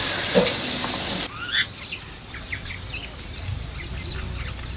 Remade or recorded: recorded